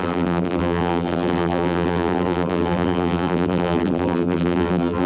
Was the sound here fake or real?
fake